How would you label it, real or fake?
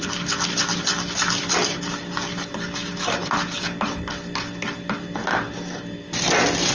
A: real